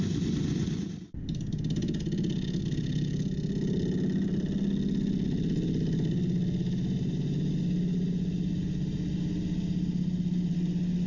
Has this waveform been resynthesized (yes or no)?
no